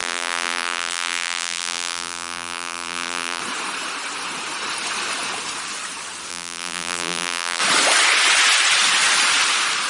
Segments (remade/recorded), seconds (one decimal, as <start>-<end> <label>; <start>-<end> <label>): 0.0-3.4 remade; 3.4-6.3 recorded; 6.3-7.6 remade; 7.6-9.9 recorded